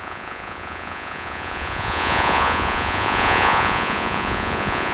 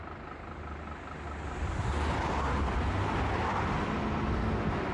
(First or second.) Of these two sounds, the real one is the second